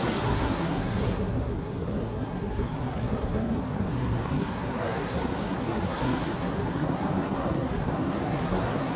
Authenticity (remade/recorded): remade